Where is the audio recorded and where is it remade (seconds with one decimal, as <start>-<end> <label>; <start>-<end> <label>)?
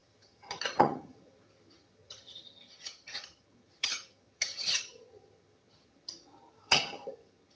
0.0-7.6 remade